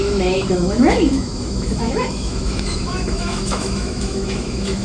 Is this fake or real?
fake